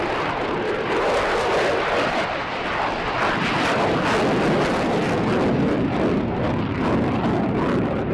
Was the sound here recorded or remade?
recorded